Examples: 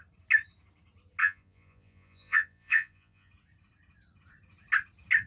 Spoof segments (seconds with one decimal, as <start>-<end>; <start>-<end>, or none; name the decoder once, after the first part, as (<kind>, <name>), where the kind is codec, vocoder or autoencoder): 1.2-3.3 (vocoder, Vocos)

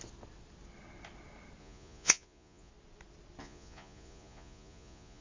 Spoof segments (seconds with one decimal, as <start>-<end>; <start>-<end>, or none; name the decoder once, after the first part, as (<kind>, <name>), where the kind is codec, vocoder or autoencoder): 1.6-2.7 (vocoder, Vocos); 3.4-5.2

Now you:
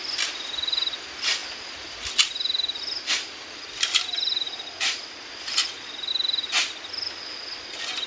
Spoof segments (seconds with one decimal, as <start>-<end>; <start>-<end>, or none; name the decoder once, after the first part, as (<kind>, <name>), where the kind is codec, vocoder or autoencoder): none